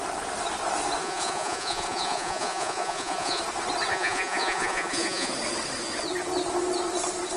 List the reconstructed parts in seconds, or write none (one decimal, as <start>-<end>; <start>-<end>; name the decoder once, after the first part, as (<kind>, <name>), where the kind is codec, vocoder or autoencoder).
1.0-3.4 (vocoder, Vocos); 3.9-5.3